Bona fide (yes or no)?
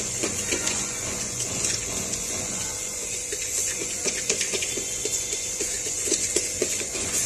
no